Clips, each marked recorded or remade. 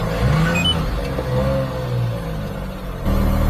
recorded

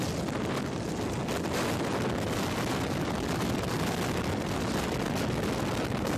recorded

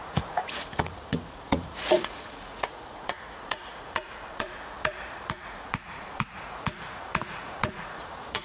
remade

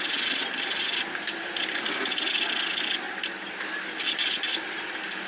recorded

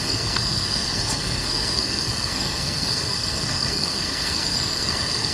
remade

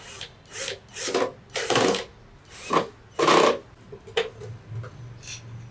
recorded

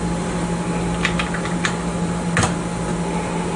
recorded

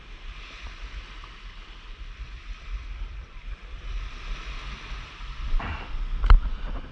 recorded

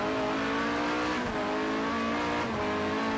recorded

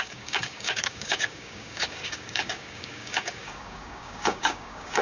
remade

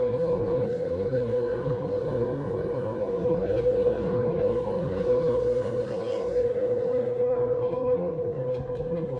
remade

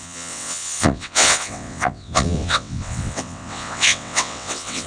remade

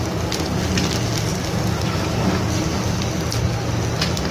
recorded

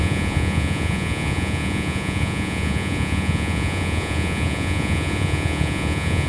remade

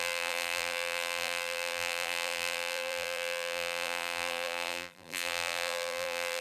remade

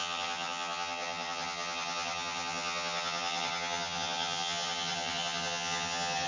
remade